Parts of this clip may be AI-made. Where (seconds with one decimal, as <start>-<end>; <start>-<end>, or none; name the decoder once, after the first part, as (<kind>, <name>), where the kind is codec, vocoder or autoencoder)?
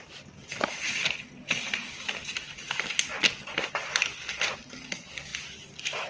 none